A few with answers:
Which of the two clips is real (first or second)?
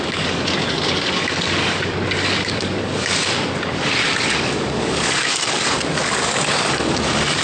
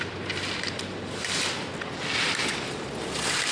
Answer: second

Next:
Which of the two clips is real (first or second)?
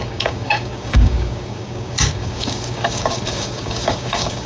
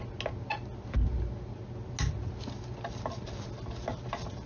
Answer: second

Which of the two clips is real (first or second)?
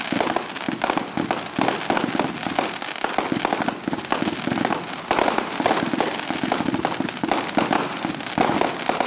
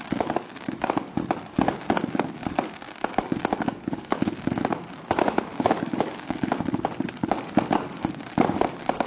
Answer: first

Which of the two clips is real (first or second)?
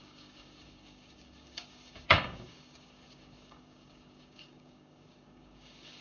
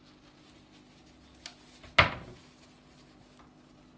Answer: second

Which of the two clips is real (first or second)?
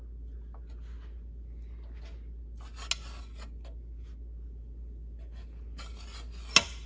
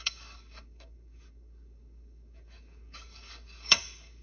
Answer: first